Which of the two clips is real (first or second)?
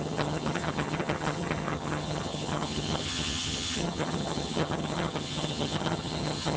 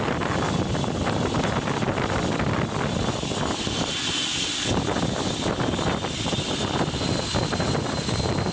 second